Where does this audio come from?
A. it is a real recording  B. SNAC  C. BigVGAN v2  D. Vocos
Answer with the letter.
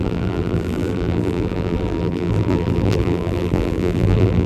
C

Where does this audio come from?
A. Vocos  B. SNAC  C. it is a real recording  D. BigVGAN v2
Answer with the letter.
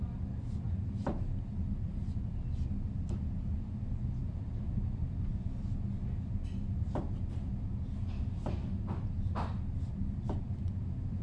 C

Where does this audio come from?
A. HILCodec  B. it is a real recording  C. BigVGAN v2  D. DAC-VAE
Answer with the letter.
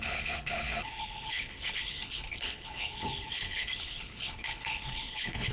A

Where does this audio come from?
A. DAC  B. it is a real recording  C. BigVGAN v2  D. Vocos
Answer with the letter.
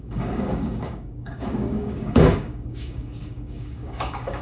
A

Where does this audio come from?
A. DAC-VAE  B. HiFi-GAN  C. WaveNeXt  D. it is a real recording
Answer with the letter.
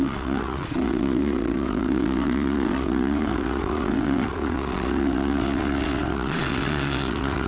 C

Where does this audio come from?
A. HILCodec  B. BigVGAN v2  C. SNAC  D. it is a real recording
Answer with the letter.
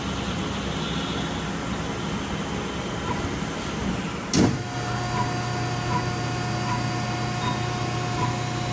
D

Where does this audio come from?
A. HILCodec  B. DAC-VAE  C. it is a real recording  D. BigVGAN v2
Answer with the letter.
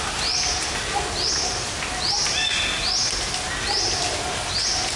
C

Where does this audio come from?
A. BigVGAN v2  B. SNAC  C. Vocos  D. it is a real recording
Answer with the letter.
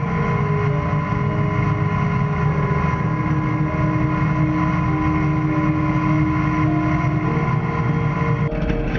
D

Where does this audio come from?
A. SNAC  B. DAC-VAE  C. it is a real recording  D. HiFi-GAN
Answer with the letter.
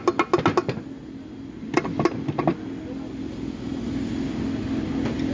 C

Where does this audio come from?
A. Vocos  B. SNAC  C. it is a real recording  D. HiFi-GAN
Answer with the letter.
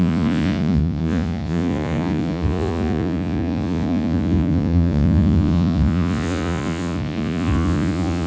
A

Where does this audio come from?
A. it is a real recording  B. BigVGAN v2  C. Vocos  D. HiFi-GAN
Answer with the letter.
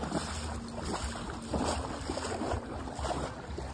A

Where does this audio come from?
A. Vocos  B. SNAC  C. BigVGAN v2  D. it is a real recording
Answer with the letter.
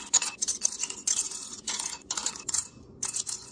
A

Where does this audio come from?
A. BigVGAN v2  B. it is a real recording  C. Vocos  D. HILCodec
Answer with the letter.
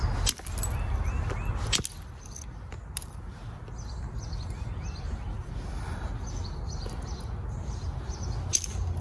B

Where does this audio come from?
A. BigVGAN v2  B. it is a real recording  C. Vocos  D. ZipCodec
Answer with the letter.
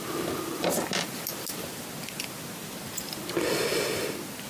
B